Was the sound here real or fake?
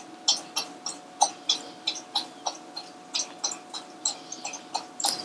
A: real